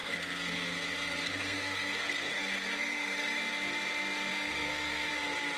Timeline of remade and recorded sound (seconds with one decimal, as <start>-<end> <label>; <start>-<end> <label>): 0.0-3.4 remade; 3.4-4.3 recorded; 4.3-5.1 remade; 5.1-5.6 recorded